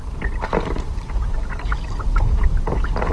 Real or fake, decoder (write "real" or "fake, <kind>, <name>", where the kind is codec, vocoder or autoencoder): real